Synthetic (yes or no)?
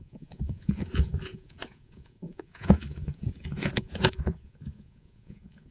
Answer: yes